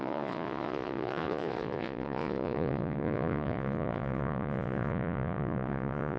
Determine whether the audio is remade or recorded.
remade